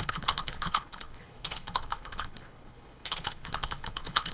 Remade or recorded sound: remade